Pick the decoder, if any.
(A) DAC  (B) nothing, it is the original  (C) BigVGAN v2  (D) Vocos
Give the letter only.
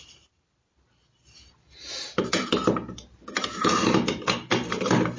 C